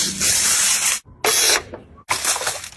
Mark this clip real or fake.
real